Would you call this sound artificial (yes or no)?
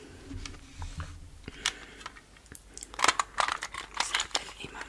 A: no